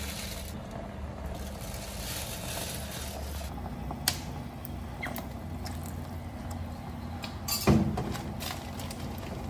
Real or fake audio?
real